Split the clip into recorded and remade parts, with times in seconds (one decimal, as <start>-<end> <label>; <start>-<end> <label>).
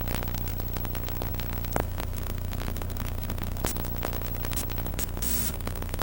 0.0-1.8 recorded; 1.8-3.6 remade; 3.6-4.9 recorded; 4.9-6.0 remade